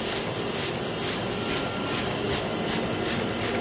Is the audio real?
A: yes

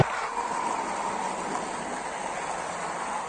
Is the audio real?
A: yes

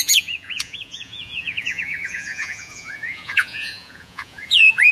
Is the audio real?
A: no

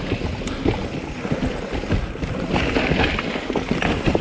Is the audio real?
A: yes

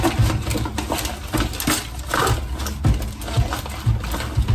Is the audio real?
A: yes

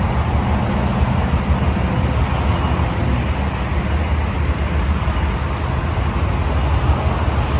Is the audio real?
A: yes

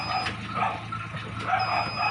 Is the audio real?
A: yes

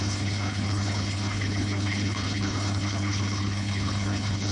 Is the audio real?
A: no